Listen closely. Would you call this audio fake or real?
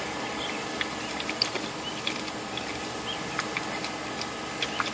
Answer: fake